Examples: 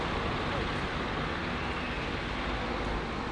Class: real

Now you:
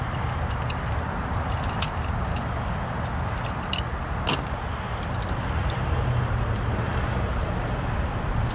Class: real